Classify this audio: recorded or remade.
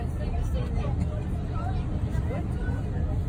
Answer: recorded